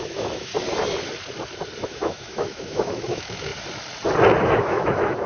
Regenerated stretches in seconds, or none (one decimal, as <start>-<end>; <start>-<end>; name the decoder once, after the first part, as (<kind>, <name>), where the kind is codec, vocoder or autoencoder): 0.0-0.5 (autoencoder, DAC-VAE); 1.8-3.5; 4.4-5.3